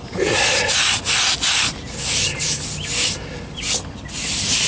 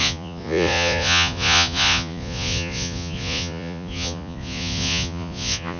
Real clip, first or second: first